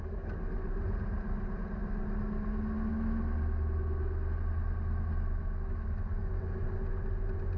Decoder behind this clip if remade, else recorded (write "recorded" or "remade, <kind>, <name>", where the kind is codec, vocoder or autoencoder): recorded